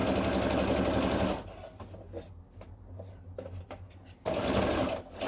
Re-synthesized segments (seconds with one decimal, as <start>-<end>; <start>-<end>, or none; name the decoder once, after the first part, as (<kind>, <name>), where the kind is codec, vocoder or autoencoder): none